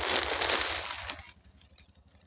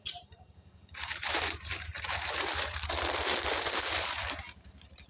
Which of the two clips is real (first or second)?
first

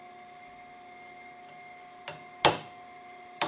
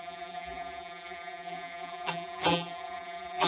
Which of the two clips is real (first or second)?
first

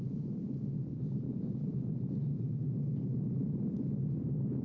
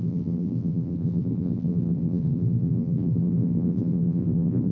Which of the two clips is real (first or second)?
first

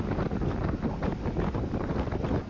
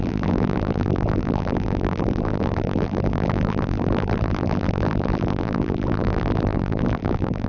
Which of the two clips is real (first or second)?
first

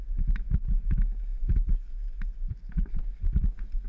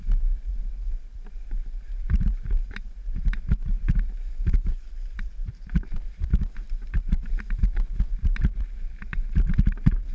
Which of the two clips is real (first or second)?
first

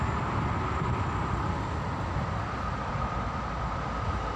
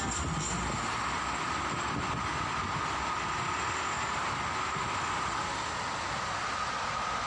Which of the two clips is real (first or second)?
second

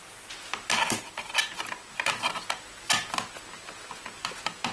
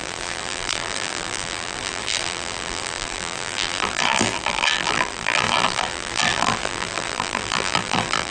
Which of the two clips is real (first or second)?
first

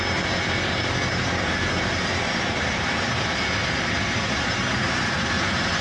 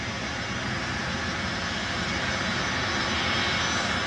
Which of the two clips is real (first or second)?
second